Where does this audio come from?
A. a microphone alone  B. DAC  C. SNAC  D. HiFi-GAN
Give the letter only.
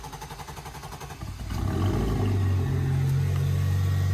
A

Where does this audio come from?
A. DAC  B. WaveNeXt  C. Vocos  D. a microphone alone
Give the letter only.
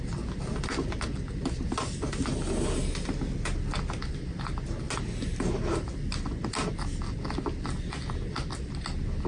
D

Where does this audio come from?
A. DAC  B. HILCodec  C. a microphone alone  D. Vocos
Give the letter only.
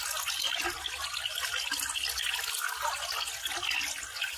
C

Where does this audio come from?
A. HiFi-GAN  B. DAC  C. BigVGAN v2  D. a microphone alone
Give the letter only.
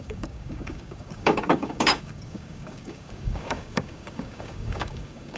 B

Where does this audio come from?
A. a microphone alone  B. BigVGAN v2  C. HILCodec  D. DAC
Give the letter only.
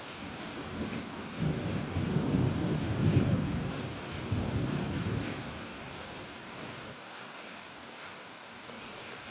D